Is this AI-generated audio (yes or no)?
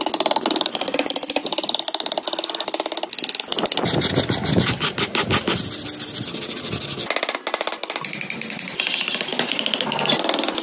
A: no